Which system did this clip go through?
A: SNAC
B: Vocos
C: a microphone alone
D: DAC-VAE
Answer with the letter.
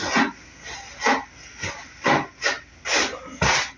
C